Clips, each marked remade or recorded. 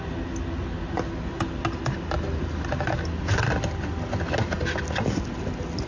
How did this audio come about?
recorded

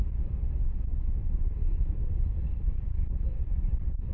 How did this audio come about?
remade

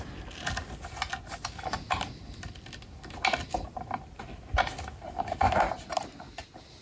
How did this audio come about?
recorded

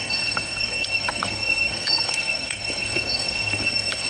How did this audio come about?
remade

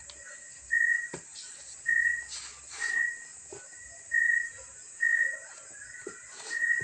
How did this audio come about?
recorded